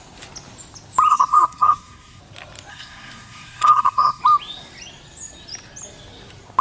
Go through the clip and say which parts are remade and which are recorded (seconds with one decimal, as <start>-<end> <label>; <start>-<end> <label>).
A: 0.0-1.1 recorded; 1.1-2.2 remade; 2.2-2.7 recorded; 2.7-4.2 remade; 4.2-6.6 recorded